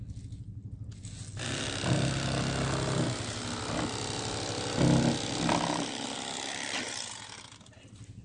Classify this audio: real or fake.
real